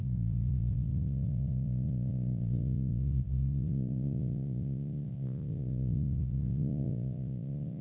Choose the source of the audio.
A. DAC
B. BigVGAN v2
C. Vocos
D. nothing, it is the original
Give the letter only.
C